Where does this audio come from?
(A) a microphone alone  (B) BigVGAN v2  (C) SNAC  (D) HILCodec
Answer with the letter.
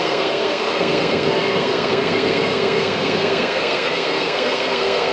C